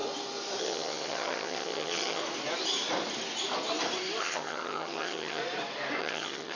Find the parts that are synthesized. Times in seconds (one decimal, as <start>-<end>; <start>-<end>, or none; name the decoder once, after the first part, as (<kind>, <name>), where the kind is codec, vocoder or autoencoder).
0.6-2.2 (vocoder, HiFi-GAN); 4.2-5.4; 6.0-6.6